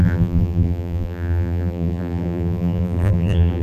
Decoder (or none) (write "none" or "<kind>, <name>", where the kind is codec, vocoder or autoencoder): vocoder, BigVGAN v2